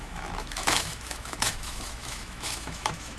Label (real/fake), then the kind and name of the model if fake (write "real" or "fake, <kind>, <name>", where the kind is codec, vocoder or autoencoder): fake, autoencoder, DAC-VAE